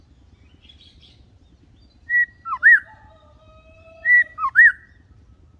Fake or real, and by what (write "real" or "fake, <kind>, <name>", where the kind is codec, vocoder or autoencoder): real